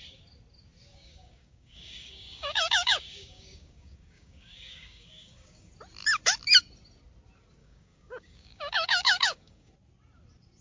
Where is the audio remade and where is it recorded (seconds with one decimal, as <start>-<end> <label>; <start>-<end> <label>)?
0.0-0.9 recorded; 0.9-5.7 remade; 5.7-7.6 recorded; 7.6-9.7 remade; 9.7-10.6 recorded